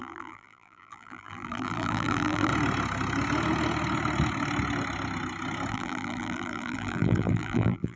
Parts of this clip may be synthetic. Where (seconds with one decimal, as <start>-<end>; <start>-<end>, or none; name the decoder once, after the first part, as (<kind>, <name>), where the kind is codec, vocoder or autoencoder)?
0.0-2.5 (vocoder, BigVGAN v2); 5.7-8.0